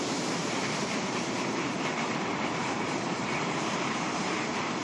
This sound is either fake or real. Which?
fake